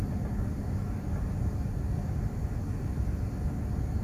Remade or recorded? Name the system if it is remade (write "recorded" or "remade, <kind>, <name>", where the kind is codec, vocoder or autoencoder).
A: recorded